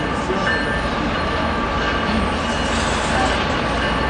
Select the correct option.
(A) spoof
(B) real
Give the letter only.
B